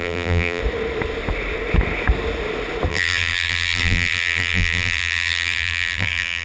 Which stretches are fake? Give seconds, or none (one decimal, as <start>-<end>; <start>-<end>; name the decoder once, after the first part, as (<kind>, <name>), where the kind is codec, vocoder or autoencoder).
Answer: 0.0-0.6 (vocoder, BigVGAN v2); 2.9-6.4